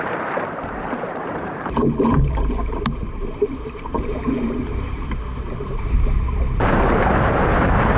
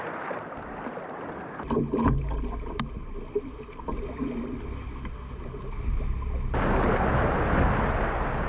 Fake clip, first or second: first